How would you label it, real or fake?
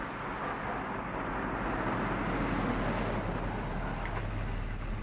real